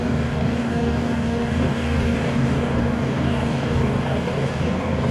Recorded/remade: remade